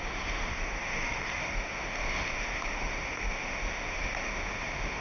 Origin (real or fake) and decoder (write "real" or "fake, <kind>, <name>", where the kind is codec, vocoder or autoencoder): fake, autoencoder, DAC-VAE